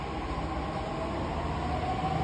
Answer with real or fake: real